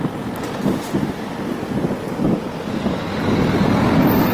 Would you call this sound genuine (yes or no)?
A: yes